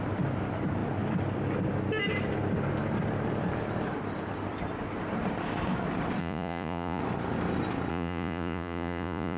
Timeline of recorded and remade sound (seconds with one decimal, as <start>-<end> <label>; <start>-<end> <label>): 0.0-6.2 recorded; 6.2-7.0 remade; 7.0-7.9 recorded; 7.9-9.4 remade